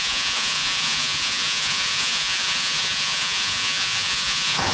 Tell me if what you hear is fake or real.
fake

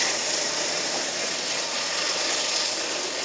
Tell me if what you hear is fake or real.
real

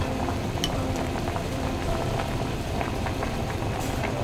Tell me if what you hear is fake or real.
fake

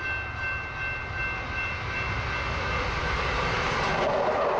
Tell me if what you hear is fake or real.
real